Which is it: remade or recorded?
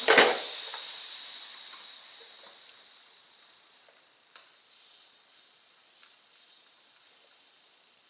recorded